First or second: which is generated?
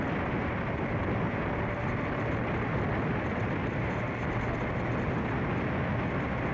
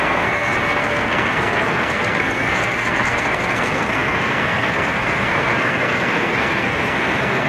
second